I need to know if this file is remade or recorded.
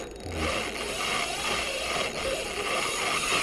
recorded